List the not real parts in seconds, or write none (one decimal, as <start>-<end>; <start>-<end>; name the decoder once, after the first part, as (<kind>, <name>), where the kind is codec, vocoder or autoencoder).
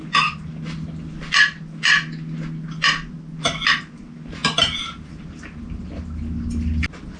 none